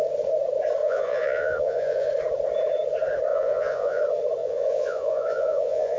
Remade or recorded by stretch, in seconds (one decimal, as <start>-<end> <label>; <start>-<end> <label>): 0.0-0.8 recorded; 0.8-2.1 remade; 2.1-3.3 recorded; 3.3-4.0 remade; 4.0-4.4 recorded; 4.4-6.0 remade